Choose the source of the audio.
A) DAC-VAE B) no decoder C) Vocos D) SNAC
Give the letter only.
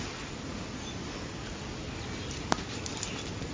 B